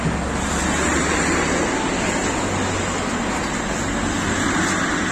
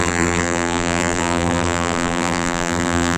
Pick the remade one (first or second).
second